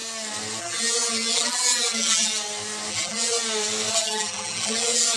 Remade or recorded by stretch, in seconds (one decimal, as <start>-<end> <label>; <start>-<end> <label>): 0.0-0.6 recorded; 0.6-2.3 remade; 2.3-2.9 recorded; 2.9-3.4 remade; 3.4-3.9 recorded; 3.9-5.2 remade